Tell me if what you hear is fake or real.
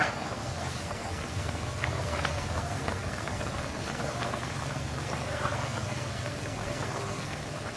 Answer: fake